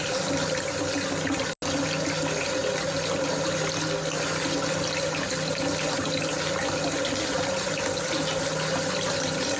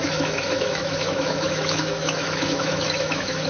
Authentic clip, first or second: first